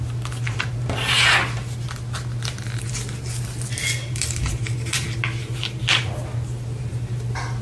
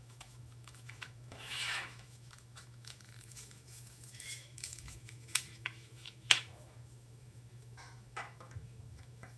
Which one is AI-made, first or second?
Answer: second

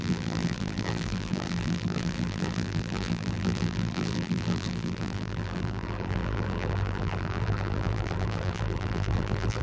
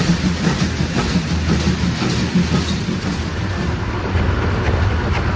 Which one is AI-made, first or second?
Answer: first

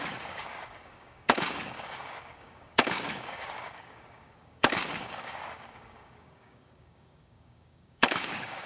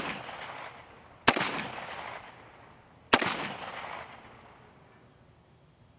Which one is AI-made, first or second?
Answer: first